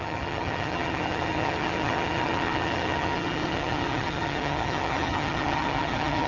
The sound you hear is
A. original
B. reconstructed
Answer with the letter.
B